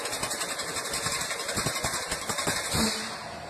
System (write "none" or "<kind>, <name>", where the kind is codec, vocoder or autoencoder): none